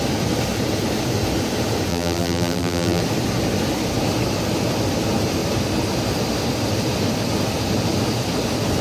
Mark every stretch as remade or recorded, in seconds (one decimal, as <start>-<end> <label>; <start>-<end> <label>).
0.0-1.9 recorded; 1.9-3.0 remade; 3.0-8.8 recorded